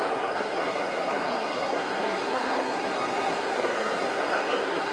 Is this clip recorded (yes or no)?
no